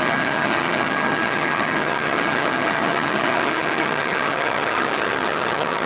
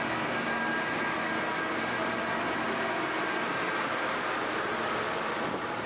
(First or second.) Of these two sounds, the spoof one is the first